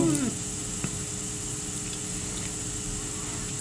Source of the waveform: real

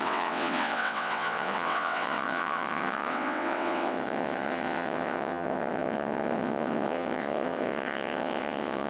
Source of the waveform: fake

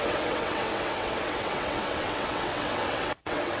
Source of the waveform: fake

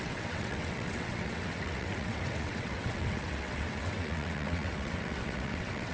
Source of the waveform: fake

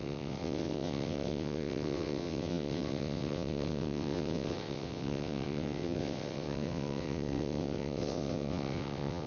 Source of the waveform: fake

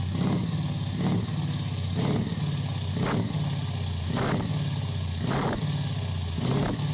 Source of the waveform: real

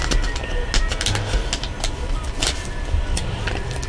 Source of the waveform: real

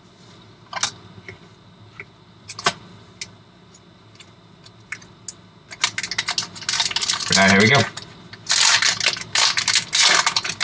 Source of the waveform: real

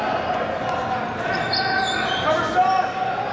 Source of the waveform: real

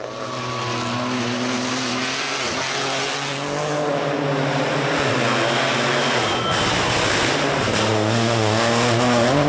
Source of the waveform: real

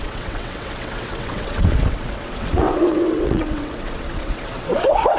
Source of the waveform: fake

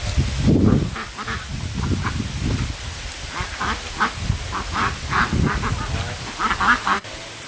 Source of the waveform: real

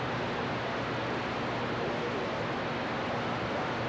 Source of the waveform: real